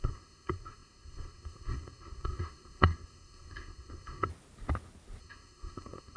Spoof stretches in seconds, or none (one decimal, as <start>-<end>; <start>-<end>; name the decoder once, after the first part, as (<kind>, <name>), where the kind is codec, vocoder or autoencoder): 0.0-4.3 (codec, SNAC); 5.2-6.2